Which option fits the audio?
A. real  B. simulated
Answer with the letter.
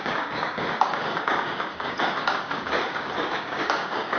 B